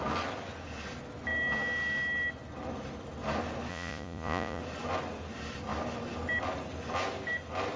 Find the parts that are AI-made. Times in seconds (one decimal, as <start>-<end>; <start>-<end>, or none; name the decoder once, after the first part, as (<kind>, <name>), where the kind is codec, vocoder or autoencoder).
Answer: 3.7-4.6 (vocoder, Vocos)